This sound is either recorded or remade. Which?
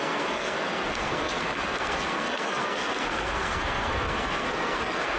remade